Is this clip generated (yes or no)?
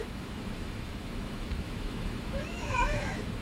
yes